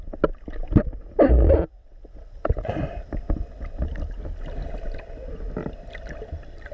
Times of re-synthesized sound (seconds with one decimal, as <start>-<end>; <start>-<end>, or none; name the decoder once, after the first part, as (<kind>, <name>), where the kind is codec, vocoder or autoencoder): 1.8-2.7 (vocoder, WaveNeXt)